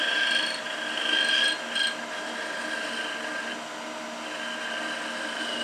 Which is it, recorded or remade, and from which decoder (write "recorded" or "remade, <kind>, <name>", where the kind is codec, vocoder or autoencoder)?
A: recorded